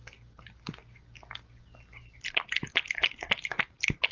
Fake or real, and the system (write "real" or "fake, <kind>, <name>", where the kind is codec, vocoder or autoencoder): real